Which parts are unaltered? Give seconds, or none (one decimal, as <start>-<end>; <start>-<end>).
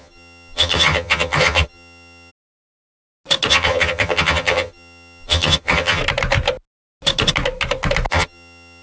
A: 2.3-3.5; 6.0-8.1